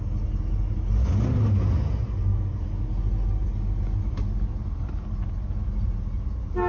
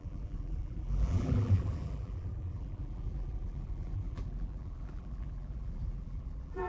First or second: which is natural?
first